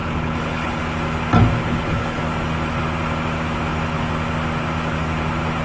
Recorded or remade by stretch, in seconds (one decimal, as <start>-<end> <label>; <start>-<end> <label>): 0.0-0.8 remade; 0.8-1.6 recorded; 1.6-2.2 remade; 2.2-5.6 recorded

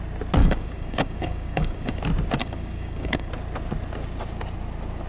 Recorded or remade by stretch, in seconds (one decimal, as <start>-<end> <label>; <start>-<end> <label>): 0.0-0.4 recorded; 0.4-2.0 remade; 2.0-2.4 recorded; 2.4-3.3 remade; 3.3-5.1 recorded